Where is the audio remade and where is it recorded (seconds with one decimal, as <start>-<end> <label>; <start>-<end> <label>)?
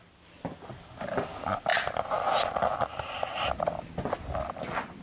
0.0-5.0 recorded